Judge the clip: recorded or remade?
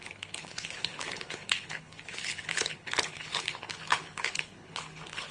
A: remade